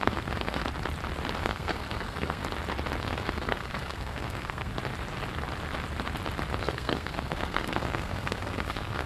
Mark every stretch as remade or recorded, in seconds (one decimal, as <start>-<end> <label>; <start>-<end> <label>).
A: 0.0-0.6 remade; 0.6-1.4 recorded; 1.4-2.4 remade; 2.4-3.0 recorded; 3.0-4.7 remade; 4.7-6.6 recorded; 6.6-9.1 remade